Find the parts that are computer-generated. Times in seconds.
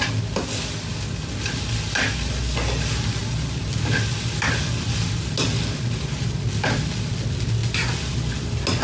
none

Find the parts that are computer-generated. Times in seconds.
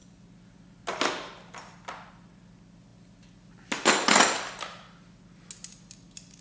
none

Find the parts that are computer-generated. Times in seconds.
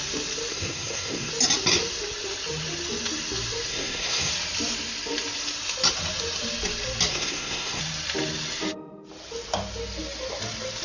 0.5-1.3 (codec, SNAC); 3.7-4.3; 7.1-7.8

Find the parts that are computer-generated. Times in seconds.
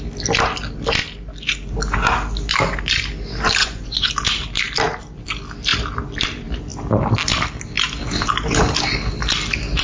3.6-4.1 (vocoder, Vocos)